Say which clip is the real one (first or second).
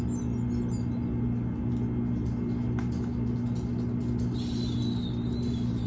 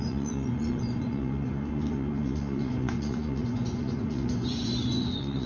first